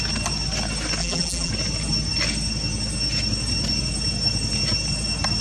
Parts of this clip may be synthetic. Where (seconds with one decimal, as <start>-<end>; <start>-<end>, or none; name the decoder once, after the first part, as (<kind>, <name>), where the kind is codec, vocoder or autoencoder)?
1.0-1.5 (vocoder, BigVGAN v2)